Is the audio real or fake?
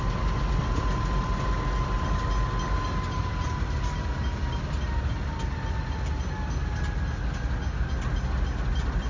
real